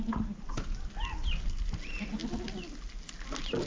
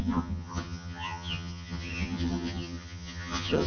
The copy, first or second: second